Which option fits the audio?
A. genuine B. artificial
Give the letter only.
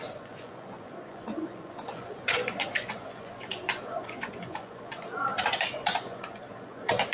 B